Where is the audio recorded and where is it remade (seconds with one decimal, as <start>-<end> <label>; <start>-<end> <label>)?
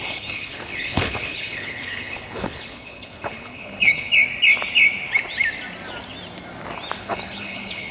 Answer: 0.0-4.1 remade; 4.1-7.0 recorded; 7.0-7.9 remade